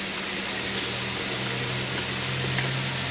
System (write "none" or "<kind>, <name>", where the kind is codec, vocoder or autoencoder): none